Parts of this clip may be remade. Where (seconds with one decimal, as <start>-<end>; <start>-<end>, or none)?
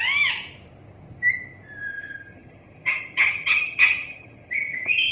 1.9-5.1